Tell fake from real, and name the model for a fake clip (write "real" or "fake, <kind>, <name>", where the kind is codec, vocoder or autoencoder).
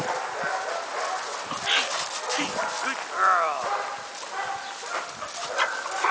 real